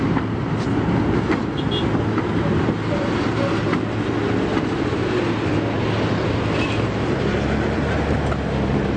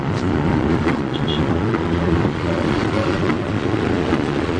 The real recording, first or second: first